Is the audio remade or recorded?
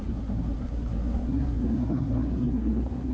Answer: remade